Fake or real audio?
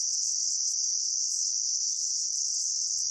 fake